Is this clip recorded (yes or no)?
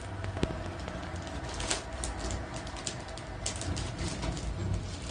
yes